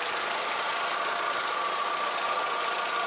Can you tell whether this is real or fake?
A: real